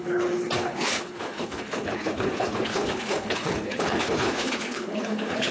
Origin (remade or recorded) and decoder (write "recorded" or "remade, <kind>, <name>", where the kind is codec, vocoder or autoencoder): remade, codec, HILCodec